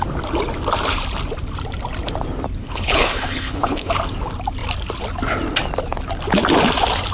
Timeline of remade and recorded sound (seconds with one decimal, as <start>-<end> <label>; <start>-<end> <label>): 0.0-2.6 recorded; 2.6-3.9 remade; 3.9-7.1 recorded

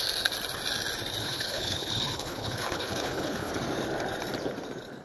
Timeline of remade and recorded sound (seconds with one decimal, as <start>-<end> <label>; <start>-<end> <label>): 0.0-1.2 recorded; 1.2-3.5 remade; 3.5-5.0 recorded

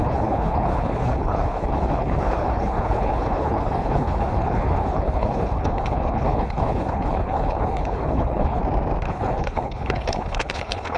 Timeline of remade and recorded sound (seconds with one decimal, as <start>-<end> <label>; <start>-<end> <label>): 0.0-8.6 remade; 8.6-9.1 recorded; 9.1-11.0 remade

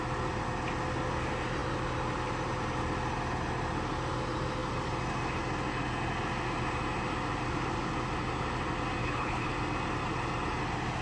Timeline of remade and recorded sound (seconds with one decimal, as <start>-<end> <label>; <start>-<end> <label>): 0.0-9.0 recorded; 9.0-9.5 remade; 9.5-11.0 recorded

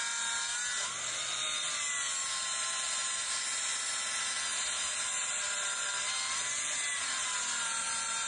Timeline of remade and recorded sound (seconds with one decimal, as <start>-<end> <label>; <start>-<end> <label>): 0.0-8.3 recorded

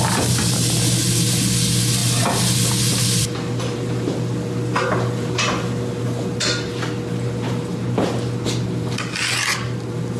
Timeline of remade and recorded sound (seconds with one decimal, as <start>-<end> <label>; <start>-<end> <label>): 0.0-10.2 recorded